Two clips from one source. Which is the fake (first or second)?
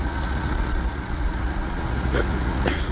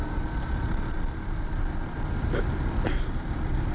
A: first